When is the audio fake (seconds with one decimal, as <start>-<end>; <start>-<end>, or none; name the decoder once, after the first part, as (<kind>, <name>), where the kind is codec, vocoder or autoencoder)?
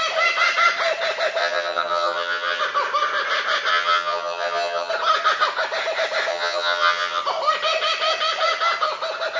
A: 1.4-2.6 (vocoder, HiFi-GAN); 3.7-4.9; 6.3-7.2